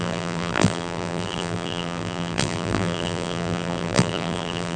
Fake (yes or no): yes